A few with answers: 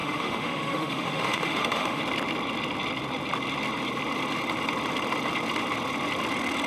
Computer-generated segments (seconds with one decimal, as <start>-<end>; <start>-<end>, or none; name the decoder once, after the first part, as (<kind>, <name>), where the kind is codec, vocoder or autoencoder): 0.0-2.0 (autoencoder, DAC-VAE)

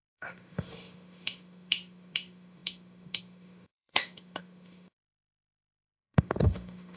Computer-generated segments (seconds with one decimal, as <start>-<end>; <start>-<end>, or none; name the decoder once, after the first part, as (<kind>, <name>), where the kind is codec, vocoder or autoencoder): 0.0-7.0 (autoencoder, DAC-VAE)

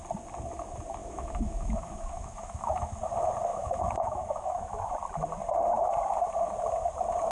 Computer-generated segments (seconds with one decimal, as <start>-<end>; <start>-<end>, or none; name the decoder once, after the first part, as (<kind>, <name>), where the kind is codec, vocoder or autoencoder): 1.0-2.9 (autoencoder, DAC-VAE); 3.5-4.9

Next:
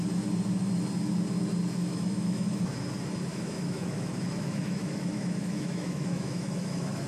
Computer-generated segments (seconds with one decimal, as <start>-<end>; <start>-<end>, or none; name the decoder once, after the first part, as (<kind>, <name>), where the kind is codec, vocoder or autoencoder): 1.9-2.6 (autoencoder, DAC-VAE); 3.3-7.1

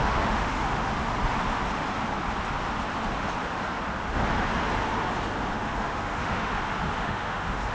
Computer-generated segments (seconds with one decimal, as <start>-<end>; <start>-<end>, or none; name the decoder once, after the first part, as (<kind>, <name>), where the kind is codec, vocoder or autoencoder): 0.0-1.0 (autoencoder, DAC-VAE); 5.5-6.5; 7.0-7.7